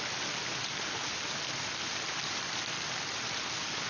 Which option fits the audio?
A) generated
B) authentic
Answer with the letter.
B